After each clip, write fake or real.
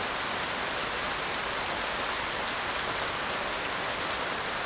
real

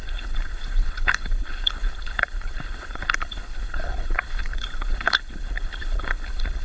fake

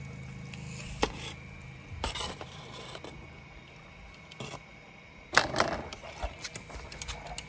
real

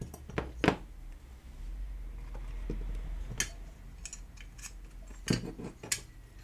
real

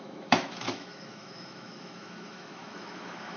fake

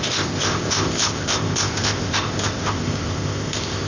fake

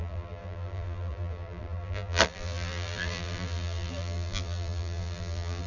fake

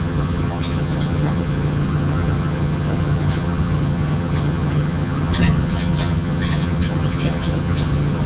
fake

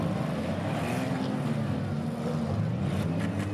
real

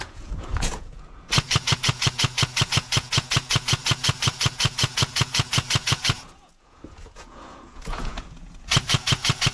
fake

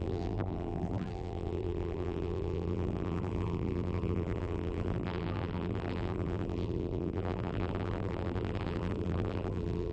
fake